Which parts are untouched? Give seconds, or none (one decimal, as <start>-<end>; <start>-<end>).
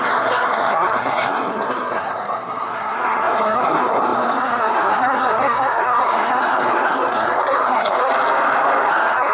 8.1-8.9